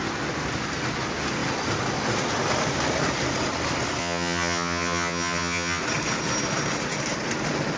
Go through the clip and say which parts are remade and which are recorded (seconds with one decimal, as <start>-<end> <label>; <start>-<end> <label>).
0.0-4.0 recorded; 4.0-5.8 remade; 5.8-7.8 recorded